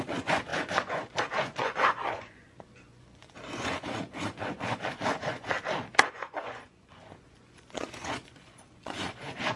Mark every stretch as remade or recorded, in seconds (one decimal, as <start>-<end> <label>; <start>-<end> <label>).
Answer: 0.0-5.5 remade; 5.5-6.1 recorded; 6.1-9.6 remade